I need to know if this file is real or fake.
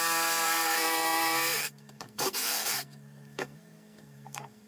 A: fake